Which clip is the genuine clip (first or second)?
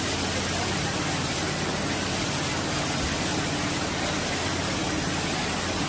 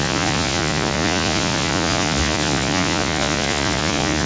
first